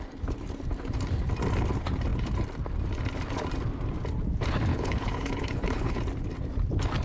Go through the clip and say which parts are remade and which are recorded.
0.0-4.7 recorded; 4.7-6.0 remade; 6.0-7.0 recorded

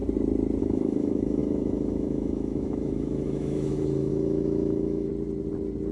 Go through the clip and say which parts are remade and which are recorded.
0.0-0.6 recorded; 0.6-5.1 remade; 5.1-5.9 recorded